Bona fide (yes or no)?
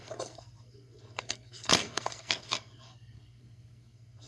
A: no